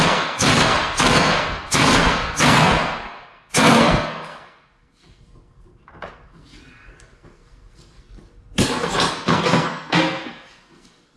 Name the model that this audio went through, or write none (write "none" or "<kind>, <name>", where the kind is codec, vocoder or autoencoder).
codec, SNAC